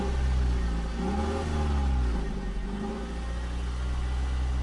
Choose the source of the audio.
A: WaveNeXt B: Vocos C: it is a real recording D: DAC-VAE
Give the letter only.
C